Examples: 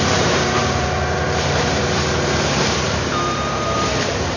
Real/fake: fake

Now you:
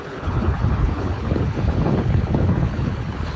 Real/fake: fake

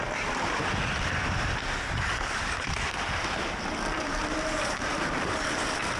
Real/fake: fake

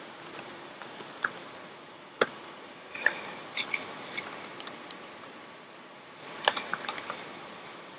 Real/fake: real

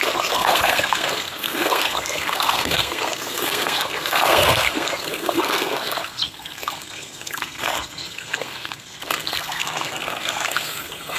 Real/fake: fake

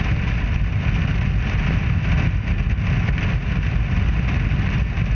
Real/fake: real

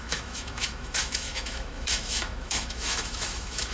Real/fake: fake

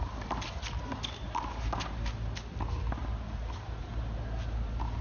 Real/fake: real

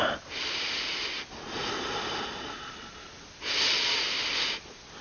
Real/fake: real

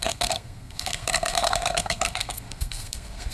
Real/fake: fake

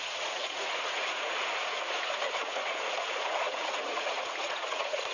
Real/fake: fake